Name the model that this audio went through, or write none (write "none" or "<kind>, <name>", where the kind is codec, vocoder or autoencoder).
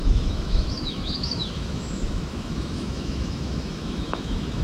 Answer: autoencoder, DAC-VAE